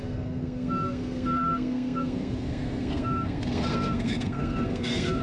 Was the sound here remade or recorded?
remade